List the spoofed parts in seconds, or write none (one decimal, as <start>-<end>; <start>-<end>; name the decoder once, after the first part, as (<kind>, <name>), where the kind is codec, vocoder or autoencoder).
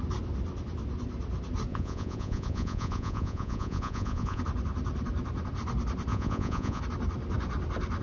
1.7-4.4 (vocoder, Vocos); 6.1-6.8